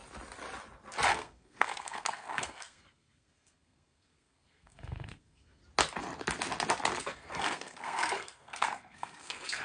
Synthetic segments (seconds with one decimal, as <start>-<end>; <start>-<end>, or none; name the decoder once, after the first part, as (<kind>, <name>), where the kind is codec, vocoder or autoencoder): 1.1-5.6 (codec, SNAC); 7.0-9.6